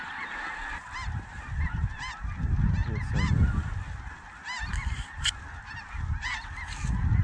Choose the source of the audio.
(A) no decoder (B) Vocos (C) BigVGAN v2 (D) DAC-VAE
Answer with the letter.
A